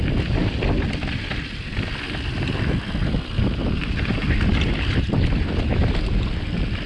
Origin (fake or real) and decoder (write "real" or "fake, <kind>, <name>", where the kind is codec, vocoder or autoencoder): real